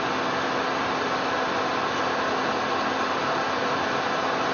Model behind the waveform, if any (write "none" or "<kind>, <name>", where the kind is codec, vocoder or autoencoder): none